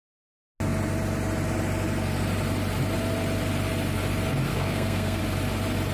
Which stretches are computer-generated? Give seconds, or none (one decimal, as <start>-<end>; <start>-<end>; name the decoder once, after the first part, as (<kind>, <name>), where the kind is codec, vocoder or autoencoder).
4.5-5.2 (codec, SNAC)